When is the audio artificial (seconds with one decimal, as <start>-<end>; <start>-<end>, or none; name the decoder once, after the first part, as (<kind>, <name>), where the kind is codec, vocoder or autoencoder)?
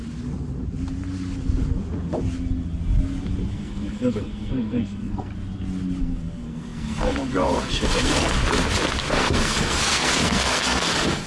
3.5-5.3 (codec, SNAC); 6.0-8.4; 9.1-11.3